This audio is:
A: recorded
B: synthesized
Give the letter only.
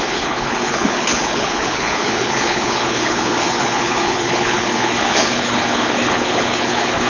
B